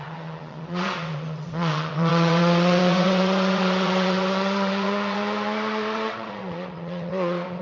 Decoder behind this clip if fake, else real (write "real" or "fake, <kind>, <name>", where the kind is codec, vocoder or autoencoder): fake, vocoder, WaveNeXt